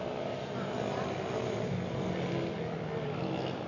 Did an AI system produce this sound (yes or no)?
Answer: no